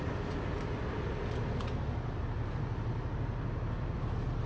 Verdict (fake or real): real